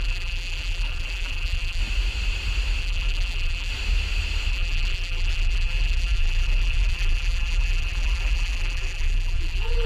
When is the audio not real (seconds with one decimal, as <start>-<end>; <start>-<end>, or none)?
0.0-1.8; 2.8-3.7; 4.5-9.9